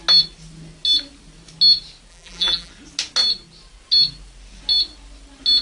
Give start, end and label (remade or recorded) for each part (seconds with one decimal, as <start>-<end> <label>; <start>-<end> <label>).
0.0-2.1 recorded; 2.1-2.7 remade; 2.7-5.6 recorded